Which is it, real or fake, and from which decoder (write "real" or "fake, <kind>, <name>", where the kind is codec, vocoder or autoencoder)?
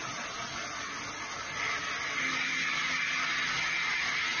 real